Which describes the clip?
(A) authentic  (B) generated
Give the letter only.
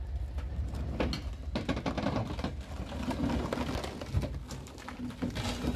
A